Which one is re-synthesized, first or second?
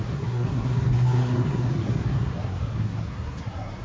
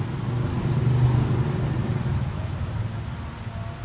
first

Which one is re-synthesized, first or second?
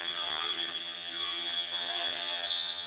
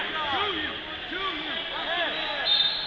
first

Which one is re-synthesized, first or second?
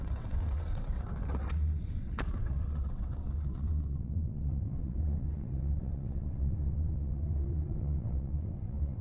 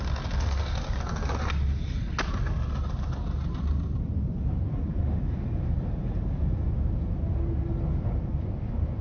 first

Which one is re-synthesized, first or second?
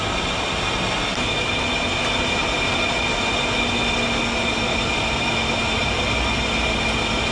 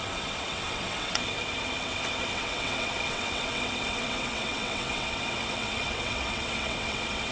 second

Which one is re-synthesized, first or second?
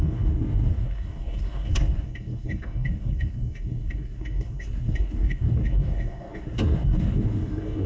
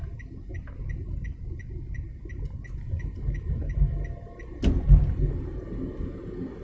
first